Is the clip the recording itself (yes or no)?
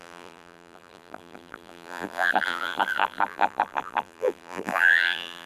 no